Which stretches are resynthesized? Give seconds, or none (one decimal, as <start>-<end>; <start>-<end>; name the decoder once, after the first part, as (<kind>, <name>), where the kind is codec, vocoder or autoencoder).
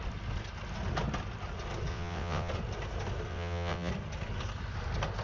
1.9-2.5 (vocoder, WaveNeXt); 3.3-3.9